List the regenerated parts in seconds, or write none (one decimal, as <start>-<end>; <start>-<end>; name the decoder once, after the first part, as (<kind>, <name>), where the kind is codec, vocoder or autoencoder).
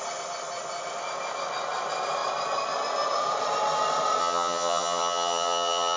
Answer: 4.2-6.0 (vocoder, HiFi-GAN)